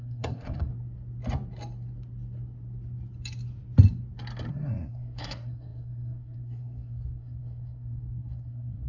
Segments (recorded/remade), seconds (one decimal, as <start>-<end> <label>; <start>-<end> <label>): 0.0-0.7 remade; 0.7-4.5 recorded; 4.5-8.9 remade